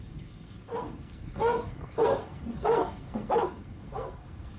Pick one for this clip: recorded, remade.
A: remade